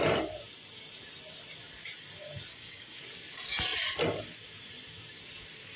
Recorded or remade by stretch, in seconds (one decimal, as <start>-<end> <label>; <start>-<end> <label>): 0.0-2.5 recorded; 2.5-3.0 remade; 3.0-5.8 recorded